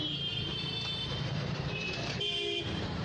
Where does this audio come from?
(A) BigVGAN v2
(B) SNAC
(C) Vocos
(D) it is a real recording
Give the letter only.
A